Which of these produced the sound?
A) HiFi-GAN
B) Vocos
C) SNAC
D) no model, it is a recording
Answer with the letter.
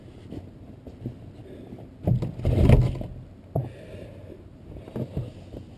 D